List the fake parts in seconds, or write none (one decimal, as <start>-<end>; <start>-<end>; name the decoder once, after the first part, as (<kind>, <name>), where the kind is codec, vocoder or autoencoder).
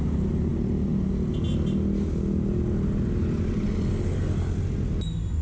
none